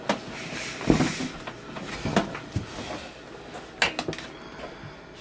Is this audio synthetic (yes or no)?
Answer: no